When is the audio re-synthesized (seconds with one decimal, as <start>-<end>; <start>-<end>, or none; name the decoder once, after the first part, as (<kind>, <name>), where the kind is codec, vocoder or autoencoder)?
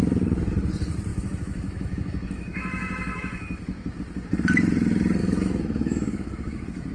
1.1-4.0 (autoencoder, DAC-VAE); 5.2-6.9